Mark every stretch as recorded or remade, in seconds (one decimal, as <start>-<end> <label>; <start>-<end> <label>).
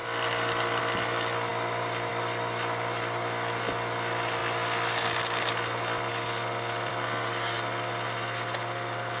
0.0-9.2 recorded